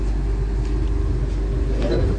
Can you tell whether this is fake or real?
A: real